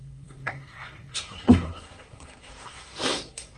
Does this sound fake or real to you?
fake